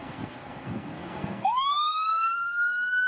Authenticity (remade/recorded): remade